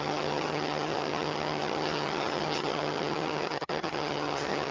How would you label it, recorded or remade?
remade